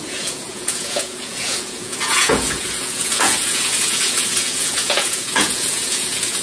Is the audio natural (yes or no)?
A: no